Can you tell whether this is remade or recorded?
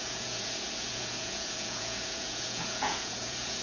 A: remade